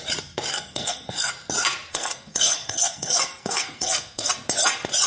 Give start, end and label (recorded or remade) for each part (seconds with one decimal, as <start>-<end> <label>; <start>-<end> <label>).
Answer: 0.0-0.5 recorded; 0.5-1.3 remade; 1.3-1.9 recorded; 1.9-4.3 remade; 4.3-5.1 recorded